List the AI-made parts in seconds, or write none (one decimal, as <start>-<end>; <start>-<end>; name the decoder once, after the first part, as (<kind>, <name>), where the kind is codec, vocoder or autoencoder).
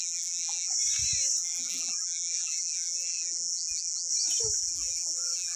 0.0-0.7 (vocoder, BigVGAN v2); 1.4-4.1; 4.6-5.6